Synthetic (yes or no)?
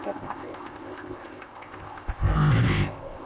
yes